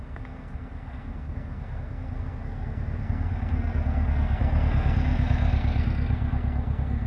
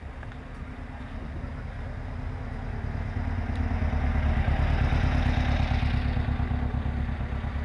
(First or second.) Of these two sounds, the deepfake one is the first